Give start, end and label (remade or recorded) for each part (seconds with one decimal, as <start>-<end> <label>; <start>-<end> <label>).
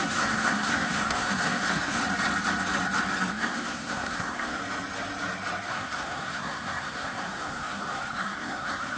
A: 0.0-2.0 remade; 2.0-3.3 recorded; 3.3-4.6 remade; 4.6-5.7 recorded; 5.7-9.0 remade